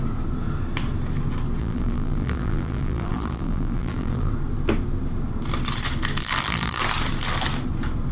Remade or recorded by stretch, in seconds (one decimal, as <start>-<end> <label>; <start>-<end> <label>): 0.0-1.6 recorded; 1.6-4.3 remade; 4.3-6.2 recorded; 6.2-6.8 remade; 6.8-8.1 recorded